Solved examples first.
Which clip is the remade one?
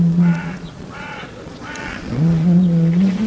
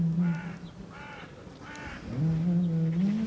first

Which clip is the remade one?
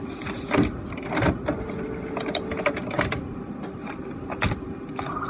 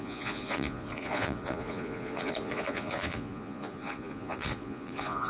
second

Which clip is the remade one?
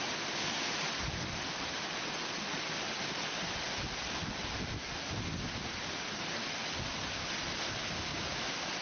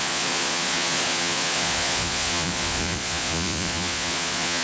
second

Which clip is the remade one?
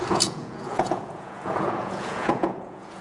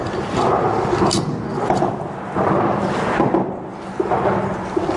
first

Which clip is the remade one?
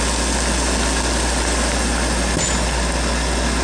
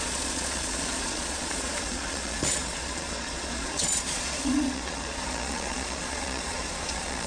second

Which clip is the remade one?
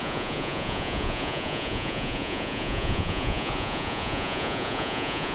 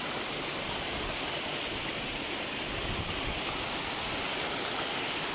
first